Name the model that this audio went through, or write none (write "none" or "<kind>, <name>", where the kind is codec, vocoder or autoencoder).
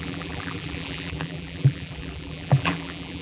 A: vocoder, BigVGAN v2